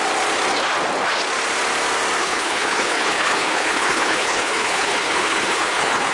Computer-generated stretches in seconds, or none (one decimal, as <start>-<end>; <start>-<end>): 2.2-6.1